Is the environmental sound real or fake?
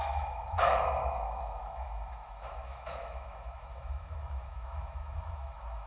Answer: fake